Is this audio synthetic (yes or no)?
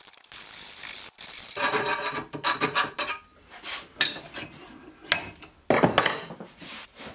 no